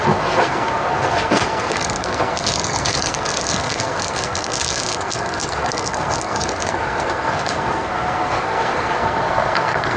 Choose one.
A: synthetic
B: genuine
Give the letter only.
A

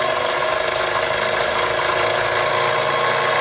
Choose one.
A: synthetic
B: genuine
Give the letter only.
B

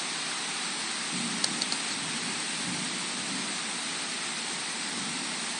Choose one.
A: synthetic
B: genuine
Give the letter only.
B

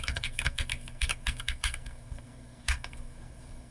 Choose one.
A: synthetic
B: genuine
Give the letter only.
A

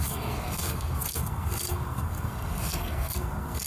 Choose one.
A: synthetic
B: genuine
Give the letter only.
A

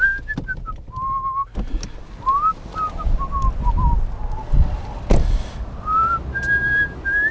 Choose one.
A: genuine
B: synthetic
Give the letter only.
A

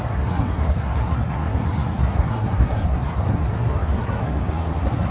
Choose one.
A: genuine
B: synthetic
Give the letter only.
B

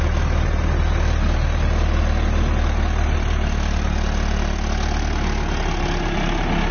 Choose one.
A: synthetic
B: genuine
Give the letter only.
B